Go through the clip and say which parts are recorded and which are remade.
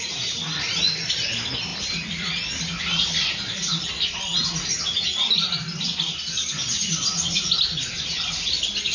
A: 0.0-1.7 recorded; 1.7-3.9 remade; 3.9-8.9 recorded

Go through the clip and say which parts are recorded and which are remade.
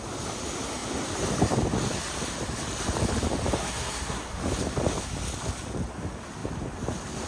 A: 0.0-3.6 recorded; 3.6-4.4 remade; 4.4-7.3 recorded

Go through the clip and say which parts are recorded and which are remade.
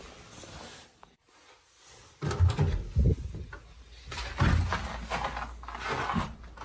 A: 0.0-6.6 recorded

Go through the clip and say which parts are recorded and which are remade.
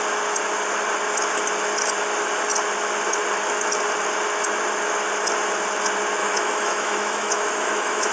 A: 0.0-6.2 recorded; 6.2-8.1 remade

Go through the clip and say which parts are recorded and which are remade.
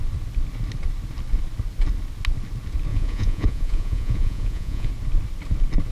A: 0.0-2.9 recorded; 2.9-4.9 remade; 4.9-5.9 recorded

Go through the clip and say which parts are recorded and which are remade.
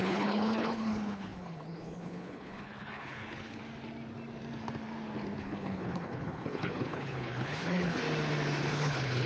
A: 0.0-3.6 remade; 3.6-5.4 recorded; 5.4-8.0 remade; 8.0-8.7 recorded; 8.7-9.3 remade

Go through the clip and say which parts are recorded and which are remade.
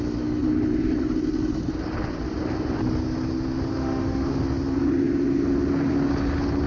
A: 0.0-3.7 recorded; 3.7-4.4 remade; 4.4-6.7 recorded